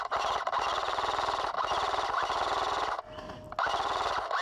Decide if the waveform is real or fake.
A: real